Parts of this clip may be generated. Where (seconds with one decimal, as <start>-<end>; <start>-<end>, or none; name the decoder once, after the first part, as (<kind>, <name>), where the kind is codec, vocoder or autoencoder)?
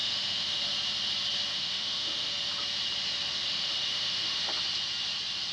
0.0-0.6 (autoencoder, DAC-VAE); 1.5-2.3; 3.3-4.6